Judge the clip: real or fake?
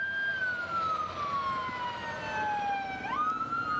real